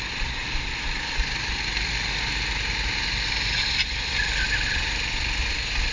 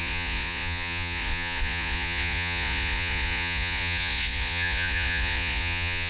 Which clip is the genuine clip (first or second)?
first